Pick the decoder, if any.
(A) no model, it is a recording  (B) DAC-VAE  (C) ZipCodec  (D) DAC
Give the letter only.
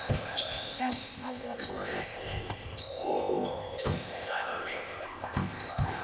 C